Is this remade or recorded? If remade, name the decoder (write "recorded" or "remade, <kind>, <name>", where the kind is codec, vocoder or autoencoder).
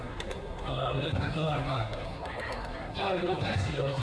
remade, codec, SNAC